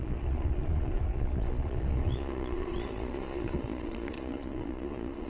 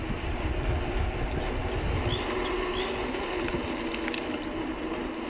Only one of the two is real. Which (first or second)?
second